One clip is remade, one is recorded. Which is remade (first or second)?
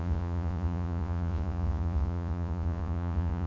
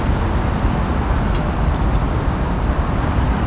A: first